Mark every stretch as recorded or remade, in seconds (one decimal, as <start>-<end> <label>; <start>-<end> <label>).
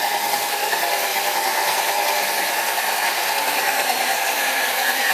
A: 0.0-5.1 remade